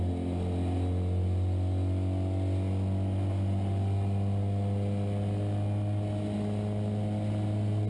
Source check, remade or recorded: recorded